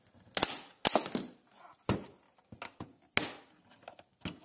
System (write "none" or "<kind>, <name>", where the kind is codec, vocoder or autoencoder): none